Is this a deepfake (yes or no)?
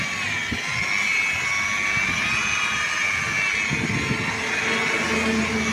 no